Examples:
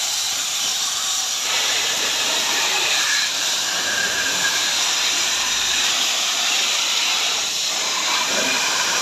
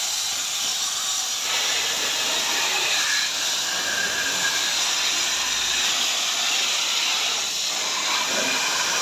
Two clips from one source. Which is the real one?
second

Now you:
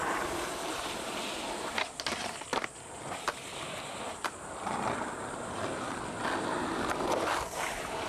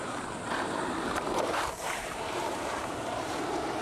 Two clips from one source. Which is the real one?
first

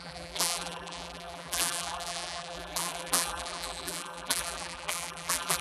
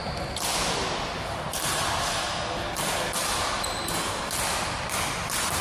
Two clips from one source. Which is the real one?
second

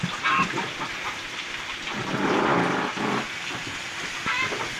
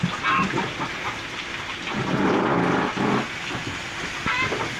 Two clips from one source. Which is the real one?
second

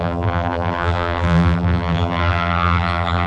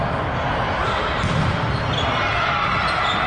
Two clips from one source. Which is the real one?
second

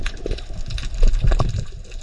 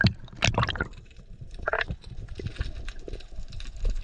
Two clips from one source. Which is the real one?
first